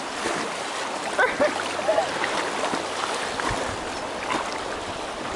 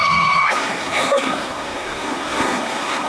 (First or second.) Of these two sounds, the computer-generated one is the second